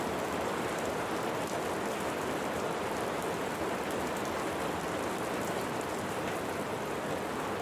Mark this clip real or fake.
real